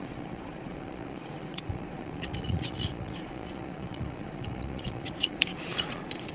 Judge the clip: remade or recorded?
remade